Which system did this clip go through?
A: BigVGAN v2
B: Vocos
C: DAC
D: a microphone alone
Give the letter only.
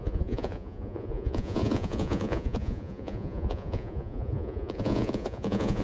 B